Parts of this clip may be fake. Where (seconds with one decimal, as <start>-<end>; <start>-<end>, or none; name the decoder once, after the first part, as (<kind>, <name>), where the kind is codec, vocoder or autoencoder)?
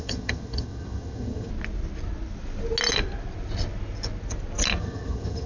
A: 0.0-1.5 (vocoder, HiFi-GAN); 4.8-5.5